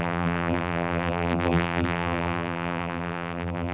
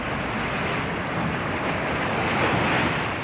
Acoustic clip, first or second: second